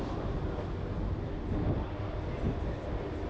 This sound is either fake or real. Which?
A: real